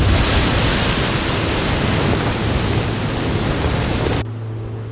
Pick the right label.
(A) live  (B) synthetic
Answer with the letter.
A